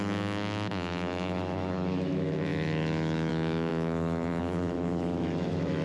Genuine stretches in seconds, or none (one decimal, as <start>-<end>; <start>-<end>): none